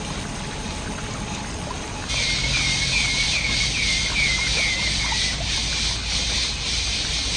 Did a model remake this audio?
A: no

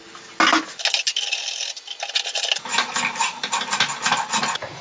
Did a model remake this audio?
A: no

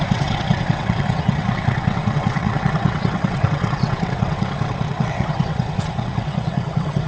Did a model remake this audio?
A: yes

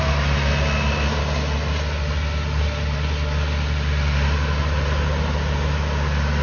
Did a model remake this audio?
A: no